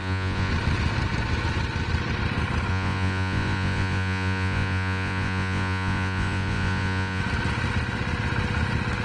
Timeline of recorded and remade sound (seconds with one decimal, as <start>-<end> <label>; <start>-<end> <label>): 0.0-0.5 remade; 0.5-2.7 recorded; 2.7-7.2 remade; 7.2-9.0 recorded